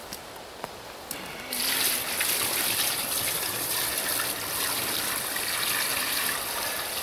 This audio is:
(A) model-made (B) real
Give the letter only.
B